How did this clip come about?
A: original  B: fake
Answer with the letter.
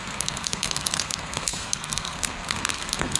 B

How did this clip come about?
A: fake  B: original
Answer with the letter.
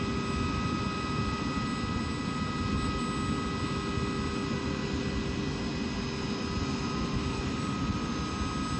B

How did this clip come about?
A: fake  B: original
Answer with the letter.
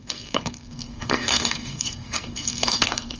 A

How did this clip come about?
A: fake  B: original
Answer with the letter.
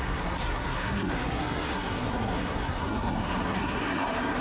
A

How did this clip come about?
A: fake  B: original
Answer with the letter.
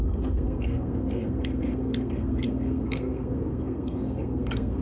A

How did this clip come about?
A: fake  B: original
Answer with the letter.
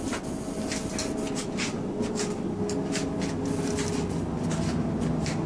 B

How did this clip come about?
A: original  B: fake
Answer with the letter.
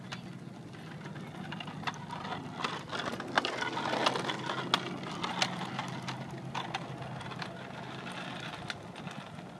A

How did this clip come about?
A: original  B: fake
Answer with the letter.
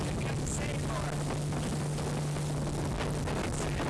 A